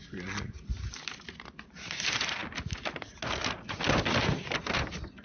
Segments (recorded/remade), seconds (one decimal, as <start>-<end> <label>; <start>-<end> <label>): 0.0-5.2 recorded

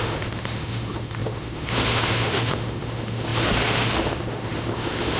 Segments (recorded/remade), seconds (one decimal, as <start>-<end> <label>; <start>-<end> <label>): 0.0-5.2 remade

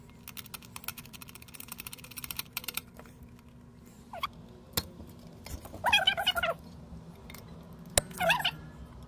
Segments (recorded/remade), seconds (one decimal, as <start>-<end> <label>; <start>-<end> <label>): 0.0-0.9 recorded; 0.9-3.2 remade; 3.2-9.1 recorded

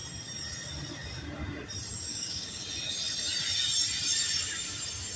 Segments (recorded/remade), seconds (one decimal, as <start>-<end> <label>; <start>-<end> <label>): 0.0-2.1 recorded; 2.1-2.7 remade; 2.7-5.2 recorded

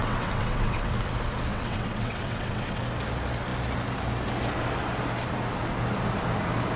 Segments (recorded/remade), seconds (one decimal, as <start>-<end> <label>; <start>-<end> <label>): 0.0-0.9 remade; 0.9-1.5 recorded; 1.5-2.8 remade; 2.8-6.8 recorded

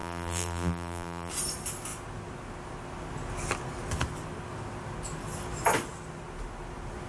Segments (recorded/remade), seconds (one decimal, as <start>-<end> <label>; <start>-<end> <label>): 0.0-1.3 remade; 1.3-7.1 recorded